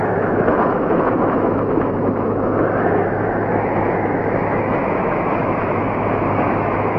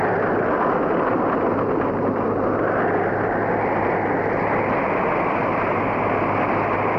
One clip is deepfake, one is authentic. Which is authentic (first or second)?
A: second